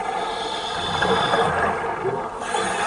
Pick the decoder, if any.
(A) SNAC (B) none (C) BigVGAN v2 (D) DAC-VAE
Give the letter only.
B